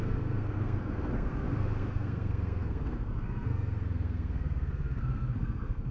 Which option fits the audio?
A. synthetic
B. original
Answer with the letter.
A